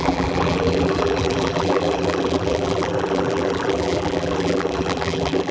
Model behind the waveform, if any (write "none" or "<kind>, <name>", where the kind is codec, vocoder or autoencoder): vocoder, BigVGAN v2